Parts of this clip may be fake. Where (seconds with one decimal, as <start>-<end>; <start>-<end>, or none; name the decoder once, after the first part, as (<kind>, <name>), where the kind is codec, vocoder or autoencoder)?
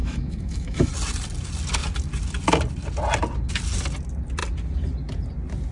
0.0-0.9 (autoencoder, DAC-VAE)